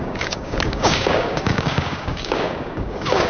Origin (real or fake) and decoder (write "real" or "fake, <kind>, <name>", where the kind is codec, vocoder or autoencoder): fake, codec, DAC